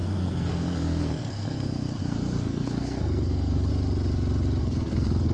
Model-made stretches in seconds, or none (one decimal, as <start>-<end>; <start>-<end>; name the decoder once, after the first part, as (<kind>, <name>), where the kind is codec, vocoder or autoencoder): 0.0-3.7 (codec, SNAC); 4.6-5.3